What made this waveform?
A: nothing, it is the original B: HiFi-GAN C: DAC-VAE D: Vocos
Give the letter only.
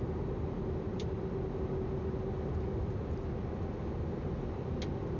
A